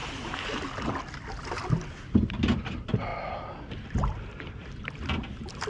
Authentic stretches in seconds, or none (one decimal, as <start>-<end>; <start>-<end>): 0.0-4.6; 5.2-5.7